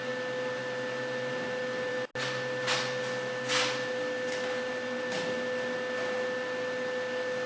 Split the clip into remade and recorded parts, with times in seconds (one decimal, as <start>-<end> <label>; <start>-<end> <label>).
0.0-7.5 recorded

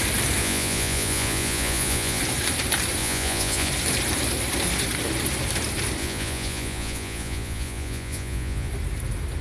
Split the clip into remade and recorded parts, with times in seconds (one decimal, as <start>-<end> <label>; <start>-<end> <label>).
0.0-0.4 recorded; 0.4-2.2 remade; 2.2-3.0 recorded; 3.0-3.7 remade; 3.7-6.0 recorded; 6.0-8.7 remade; 8.7-9.4 recorded

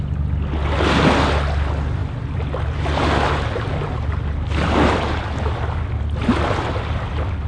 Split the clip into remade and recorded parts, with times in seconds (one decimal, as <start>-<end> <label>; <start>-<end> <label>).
0.0-7.5 recorded

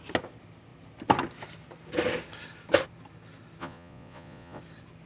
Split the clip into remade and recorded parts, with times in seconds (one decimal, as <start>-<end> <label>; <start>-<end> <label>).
0.0-3.6 recorded; 3.6-4.6 remade; 4.6-5.1 recorded

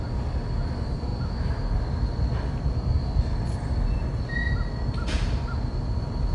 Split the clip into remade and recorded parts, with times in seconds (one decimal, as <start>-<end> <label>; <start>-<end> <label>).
0.0-6.3 recorded